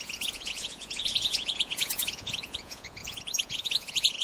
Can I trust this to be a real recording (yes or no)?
no